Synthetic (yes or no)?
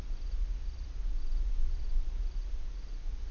no